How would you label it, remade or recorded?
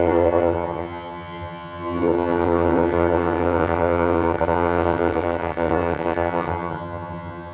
remade